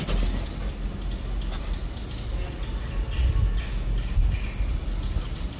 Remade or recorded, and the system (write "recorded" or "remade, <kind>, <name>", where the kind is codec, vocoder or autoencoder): recorded